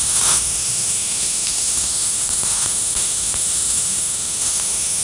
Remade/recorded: remade